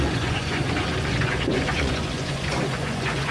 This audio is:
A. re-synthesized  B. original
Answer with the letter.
A